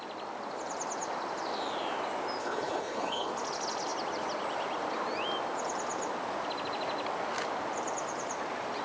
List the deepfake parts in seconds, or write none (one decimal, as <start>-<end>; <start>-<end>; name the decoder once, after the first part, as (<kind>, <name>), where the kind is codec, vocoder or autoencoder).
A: 2.4-3.3 (codec, HILCodec)